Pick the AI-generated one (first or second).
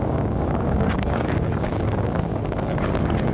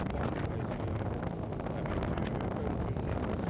first